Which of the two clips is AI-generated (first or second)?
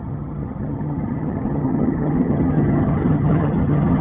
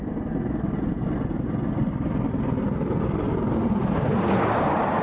first